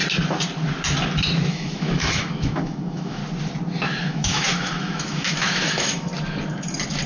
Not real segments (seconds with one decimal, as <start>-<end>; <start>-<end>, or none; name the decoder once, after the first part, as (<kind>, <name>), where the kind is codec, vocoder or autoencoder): 1.5-3.2 (autoencoder, DAC-VAE); 4.0-6.1